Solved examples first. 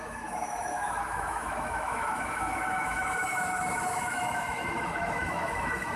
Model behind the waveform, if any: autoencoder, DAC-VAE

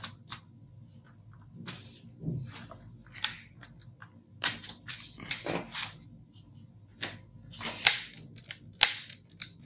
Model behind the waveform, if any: none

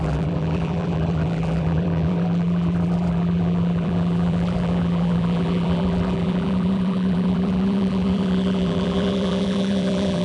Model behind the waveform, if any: vocoder, BigVGAN v2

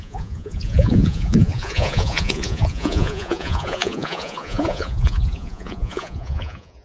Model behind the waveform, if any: vocoder, Vocos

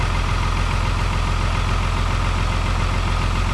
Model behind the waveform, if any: none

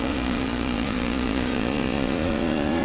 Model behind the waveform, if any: vocoder, Vocos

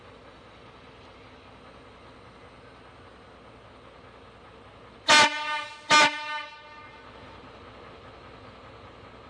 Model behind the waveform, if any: none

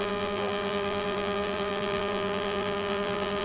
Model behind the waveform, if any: vocoder, BigVGAN v2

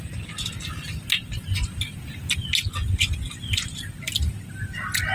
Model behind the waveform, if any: none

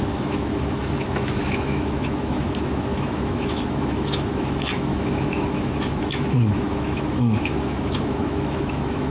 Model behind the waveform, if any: autoencoder, DAC-VAE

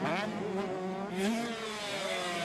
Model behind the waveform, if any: none